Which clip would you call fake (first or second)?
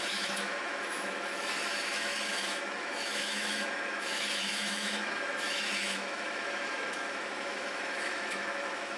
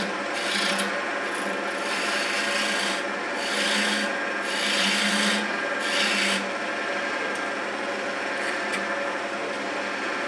first